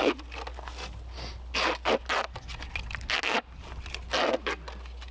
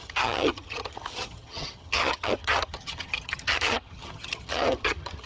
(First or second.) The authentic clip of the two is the first